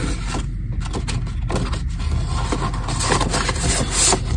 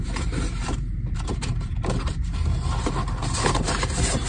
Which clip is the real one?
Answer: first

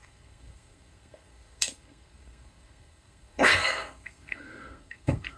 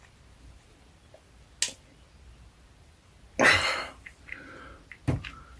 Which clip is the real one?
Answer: second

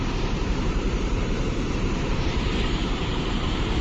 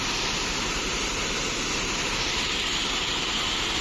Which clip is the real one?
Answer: second